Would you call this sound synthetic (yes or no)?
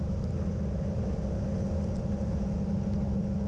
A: no